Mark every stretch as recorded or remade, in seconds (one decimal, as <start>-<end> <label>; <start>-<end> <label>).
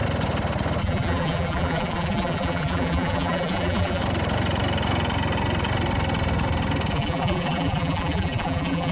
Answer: 0.0-0.8 recorded; 0.8-4.0 remade; 4.0-6.9 recorded; 6.9-8.9 remade